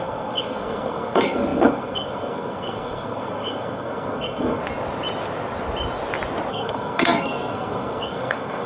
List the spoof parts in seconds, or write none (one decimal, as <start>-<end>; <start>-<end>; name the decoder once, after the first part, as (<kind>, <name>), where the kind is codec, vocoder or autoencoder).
0.0-4.6 (codec, SNAC); 6.5-8.7